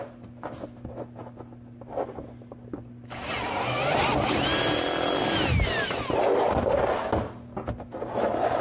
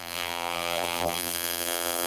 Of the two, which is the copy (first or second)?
second